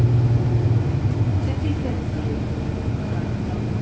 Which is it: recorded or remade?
recorded